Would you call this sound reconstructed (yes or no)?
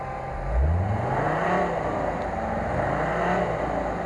no